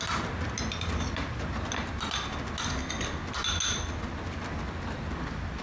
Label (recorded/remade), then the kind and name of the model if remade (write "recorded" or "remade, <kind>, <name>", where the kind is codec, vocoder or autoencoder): recorded